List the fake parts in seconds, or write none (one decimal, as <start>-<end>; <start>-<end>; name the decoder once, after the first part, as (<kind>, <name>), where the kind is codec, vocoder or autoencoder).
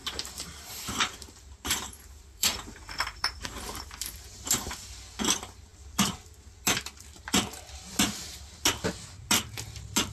0.0-4.7 (vocoder, BigVGAN v2)